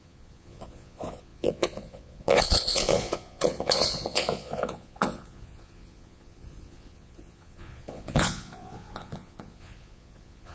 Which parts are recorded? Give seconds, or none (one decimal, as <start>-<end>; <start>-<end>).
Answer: none